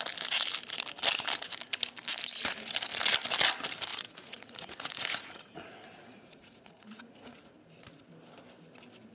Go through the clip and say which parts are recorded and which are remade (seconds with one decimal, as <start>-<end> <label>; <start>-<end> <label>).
0.0-3.9 recorded; 3.9-7.5 remade; 7.5-9.1 recorded